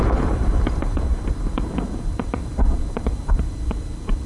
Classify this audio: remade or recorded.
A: remade